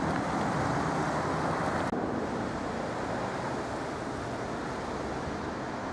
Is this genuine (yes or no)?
yes